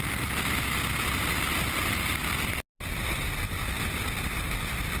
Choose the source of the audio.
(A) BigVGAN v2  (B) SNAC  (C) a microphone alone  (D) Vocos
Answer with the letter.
C